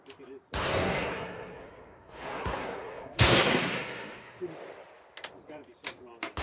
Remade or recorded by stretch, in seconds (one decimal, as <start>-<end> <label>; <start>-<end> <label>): 0.0-0.6 recorded; 0.6-4.4 remade; 4.4-6.4 recorded